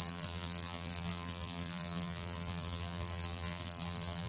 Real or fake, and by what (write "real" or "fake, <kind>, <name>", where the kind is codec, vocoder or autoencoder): fake, vocoder, BigVGAN v2